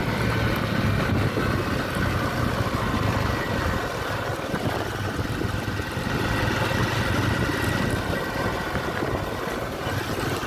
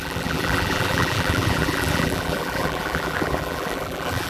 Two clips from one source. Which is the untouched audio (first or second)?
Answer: first